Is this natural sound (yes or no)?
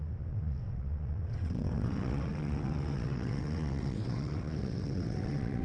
no